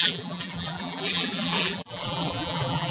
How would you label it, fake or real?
fake